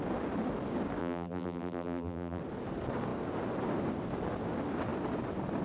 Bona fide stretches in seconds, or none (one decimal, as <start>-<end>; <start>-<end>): 0.0-1.0; 2.4-5.6